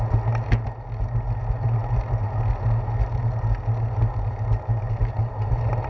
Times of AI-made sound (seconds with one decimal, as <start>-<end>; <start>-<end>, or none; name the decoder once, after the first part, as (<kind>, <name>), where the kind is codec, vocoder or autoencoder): none